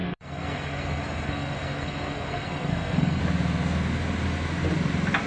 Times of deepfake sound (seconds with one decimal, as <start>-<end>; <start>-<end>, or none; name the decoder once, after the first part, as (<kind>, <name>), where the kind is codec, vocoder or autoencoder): 0.0-3.2 (codec, SNAC)